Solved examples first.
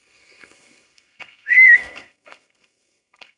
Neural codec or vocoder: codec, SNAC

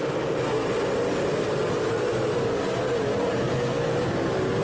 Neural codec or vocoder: none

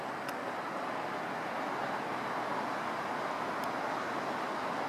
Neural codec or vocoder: none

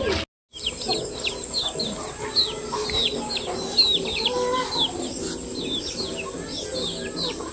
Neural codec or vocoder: none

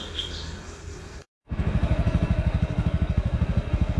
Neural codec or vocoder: codec, SNAC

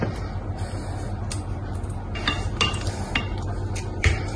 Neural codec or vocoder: none